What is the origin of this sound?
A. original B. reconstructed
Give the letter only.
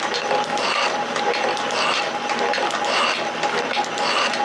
A